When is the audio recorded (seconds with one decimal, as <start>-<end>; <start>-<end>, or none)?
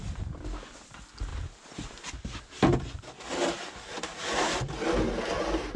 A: 0.0-5.8